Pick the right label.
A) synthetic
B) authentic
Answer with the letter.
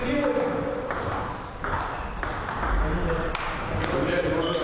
B